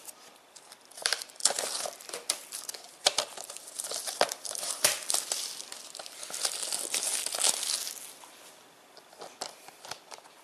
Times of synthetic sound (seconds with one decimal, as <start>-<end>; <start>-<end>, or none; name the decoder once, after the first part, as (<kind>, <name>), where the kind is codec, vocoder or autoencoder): 0.0-6.2 (vocoder, BigVGAN v2); 8.5-10.4